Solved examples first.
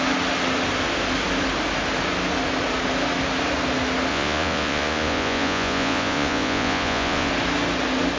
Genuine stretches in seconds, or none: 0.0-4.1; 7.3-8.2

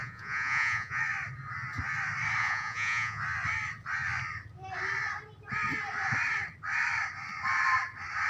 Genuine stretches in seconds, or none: 1.0-2.4; 3.2-8.3

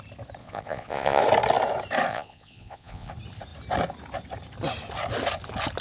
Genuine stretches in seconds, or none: 0.0-0.4; 1.2-2.1; 3.1-5.8

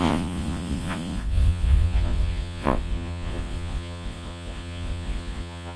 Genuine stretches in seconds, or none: none